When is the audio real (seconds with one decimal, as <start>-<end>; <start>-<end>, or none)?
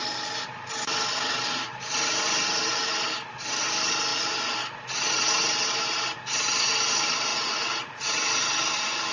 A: 0.0-7.3; 8.2-9.1